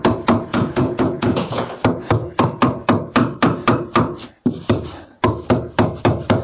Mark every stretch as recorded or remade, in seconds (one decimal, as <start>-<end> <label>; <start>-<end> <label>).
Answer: 0.0-0.5 recorded; 0.5-1.7 remade; 1.7-6.4 recorded